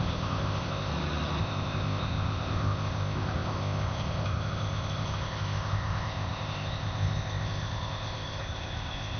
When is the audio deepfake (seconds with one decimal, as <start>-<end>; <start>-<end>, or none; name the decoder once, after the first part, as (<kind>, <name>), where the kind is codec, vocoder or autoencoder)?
0.0-0.9 (codec, ZipCodec); 1.4-9.2